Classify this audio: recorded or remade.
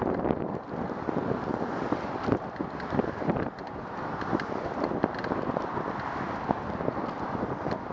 recorded